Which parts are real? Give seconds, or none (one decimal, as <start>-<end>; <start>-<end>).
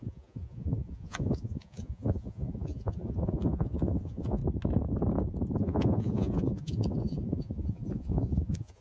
4.4-5.6